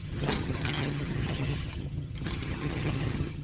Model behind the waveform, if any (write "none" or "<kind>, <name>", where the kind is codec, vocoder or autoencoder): vocoder, HiFi-GAN